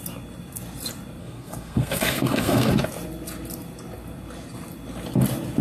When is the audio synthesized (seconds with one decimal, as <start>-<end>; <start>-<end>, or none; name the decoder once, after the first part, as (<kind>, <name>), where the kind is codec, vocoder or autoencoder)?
1.2-2.7 (codec, SNAC)